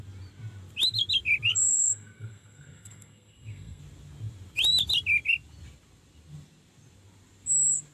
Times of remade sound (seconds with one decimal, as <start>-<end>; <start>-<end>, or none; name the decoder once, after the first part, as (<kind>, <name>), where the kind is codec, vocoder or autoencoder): 1.7-3.8 (codec, SNAC)